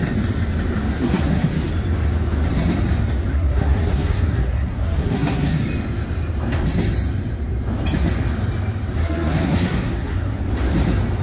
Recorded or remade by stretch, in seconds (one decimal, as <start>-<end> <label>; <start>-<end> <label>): 0.0-0.9 recorded; 0.9-1.7 remade; 1.7-3.3 recorded; 3.3-5.6 remade; 5.6-9.0 recorded; 9.0-10.4 remade; 10.4-11.2 recorded